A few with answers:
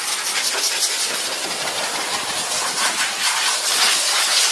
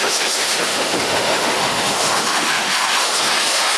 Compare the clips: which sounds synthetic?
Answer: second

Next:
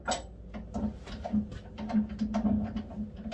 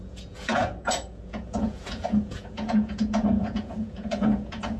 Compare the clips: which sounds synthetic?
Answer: second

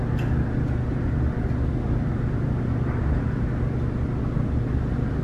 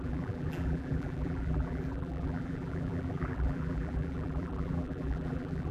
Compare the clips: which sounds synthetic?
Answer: second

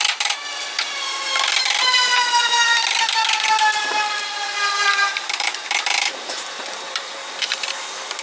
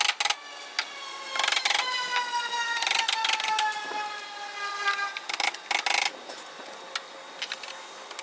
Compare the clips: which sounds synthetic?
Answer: first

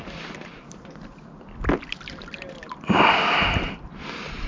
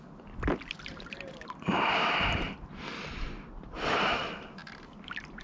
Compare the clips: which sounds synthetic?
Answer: second